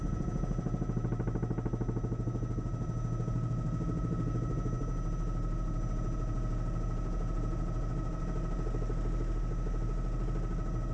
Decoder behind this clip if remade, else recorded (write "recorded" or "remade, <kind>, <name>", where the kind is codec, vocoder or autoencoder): recorded